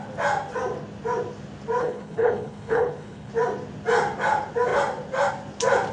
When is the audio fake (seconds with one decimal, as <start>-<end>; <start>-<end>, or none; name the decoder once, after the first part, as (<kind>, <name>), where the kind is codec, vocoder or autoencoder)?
1.8-3.3 (codec, HILCodec)